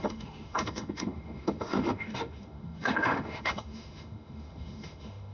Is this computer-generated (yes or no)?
yes